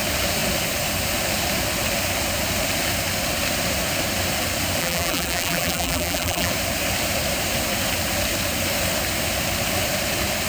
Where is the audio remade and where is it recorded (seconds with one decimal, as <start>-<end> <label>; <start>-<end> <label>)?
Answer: 0.0-4.8 recorded; 4.8-6.5 remade; 6.5-10.5 recorded